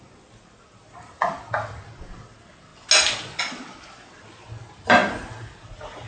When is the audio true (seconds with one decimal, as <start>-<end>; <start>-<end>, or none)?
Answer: 0.0-6.1